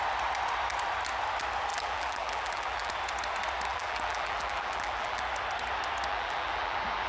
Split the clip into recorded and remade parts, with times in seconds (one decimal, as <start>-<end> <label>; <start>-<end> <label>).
0.0-1.7 recorded; 1.7-2.9 remade; 2.9-3.7 recorded; 3.7-5.2 remade; 5.2-6.1 recorded; 6.1-7.1 remade